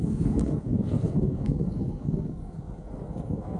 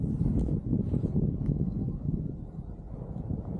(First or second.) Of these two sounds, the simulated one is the first